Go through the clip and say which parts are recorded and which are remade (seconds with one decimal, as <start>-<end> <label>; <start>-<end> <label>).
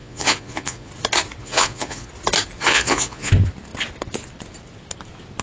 0.0-0.9 remade; 0.9-1.4 recorded; 1.4-2.1 remade; 2.1-2.6 recorded; 2.6-3.3 remade; 3.3-5.4 recorded